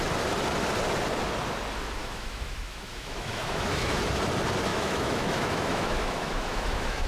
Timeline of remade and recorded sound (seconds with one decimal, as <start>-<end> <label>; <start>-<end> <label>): 0.0-2.0 recorded; 2.0-4.0 remade; 4.0-4.7 recorded; 4.7-7.1 remade